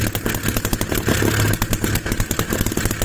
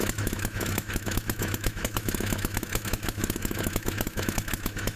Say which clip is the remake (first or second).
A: second